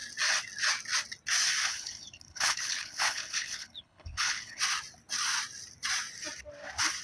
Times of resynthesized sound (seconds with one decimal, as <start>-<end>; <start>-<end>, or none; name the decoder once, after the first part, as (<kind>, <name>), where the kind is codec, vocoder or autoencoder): 1.6-4.6 (codec, HILCodec)